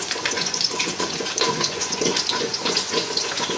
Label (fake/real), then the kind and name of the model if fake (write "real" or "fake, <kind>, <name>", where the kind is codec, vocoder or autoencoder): fake, vocoder, Vocos